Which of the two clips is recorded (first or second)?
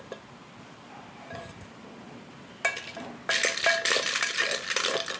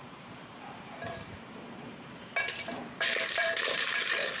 first